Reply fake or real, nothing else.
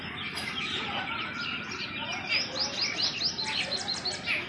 real